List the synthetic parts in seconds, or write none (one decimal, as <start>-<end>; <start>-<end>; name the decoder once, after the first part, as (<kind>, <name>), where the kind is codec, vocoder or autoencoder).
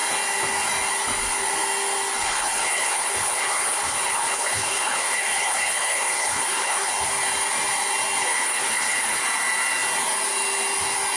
2.2-6.9 (codec, HILCodec); 8.2-9.2